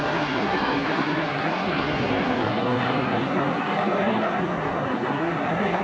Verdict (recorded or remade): remade